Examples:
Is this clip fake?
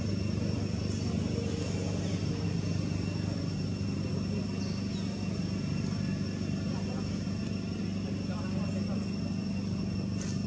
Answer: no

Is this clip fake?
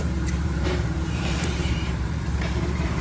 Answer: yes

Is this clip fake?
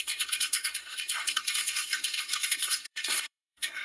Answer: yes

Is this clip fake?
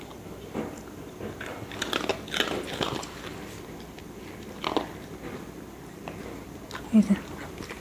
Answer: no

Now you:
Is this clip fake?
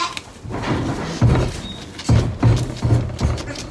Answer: no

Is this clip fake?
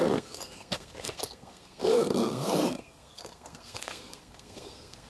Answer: yes